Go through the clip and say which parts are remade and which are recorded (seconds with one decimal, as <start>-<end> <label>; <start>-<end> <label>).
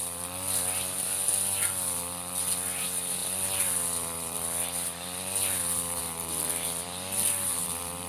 0.0-8.1 remade